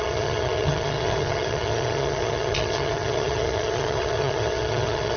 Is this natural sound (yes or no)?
no